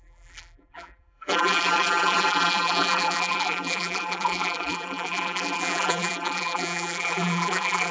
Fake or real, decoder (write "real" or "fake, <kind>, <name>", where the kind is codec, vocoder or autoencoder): fake, vocoder, BigVGAN v2